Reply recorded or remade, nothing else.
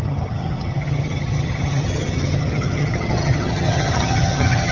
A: remade